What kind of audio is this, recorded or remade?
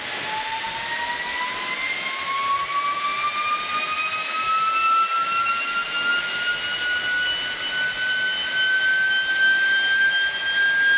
recorded